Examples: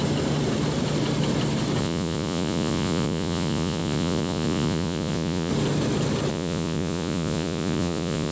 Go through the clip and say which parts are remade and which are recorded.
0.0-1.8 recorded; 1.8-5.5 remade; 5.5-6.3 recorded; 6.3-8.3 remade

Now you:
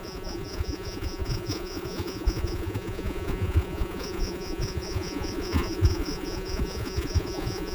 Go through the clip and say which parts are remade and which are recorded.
0.0-7.7 remade

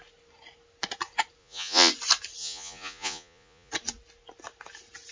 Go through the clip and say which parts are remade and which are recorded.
0.0-1.4 recorded; 1.4-1.9 remade; 1.9-2.4 recorded; 2.4-3.7 remade; 3.7-5.1 recorded

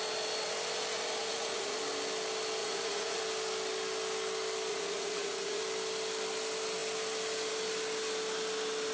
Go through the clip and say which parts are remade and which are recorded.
0.0-1.2 recorded; 1.2-1.8 remade; 1.8-2.6 recorded; 2.6-3.2 remade; 3.2-4.7 recorded; 4.7-5.6 remade; 5.6-8.9 recorded

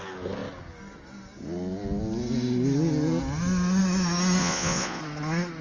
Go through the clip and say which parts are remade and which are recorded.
0.0-4.4 recorded; 4.4-5.0 remade; 5.0-5.6 recorded